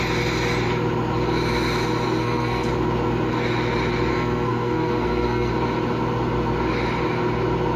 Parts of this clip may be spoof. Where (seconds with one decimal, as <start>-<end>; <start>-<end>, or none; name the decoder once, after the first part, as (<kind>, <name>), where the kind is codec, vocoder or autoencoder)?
2.2-2.7 (codec, SNAC); 4.1-5.5